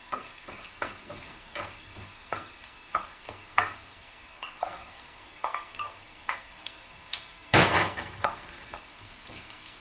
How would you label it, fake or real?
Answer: fake